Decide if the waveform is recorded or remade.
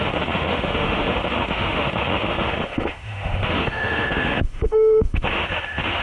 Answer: remade